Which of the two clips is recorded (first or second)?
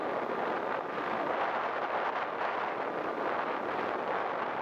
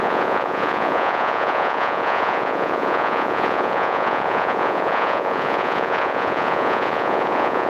first